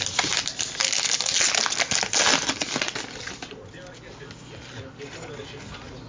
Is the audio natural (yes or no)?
yes